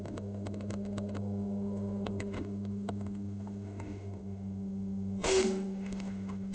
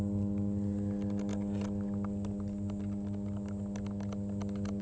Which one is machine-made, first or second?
first